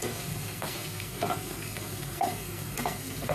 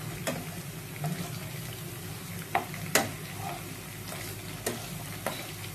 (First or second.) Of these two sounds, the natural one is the second